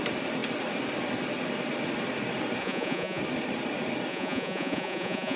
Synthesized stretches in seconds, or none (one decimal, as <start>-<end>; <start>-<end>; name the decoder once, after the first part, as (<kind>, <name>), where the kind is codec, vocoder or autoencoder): 2.6-3.2 (vocoder, Vocos); 4.1-5.4